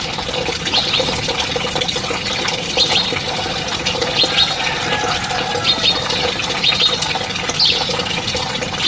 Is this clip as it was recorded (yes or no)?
yes